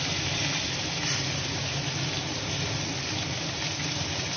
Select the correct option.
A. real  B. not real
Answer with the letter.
A